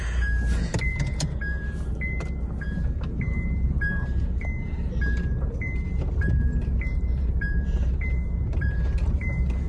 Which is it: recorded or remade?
remade